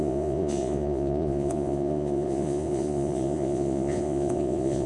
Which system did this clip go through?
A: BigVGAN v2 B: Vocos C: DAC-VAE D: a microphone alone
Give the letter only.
B